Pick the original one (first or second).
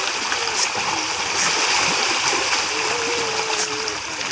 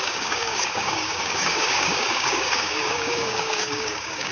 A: first